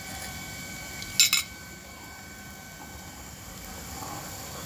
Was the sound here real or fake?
real